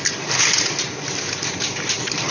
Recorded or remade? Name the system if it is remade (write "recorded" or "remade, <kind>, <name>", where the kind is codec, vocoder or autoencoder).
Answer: recorded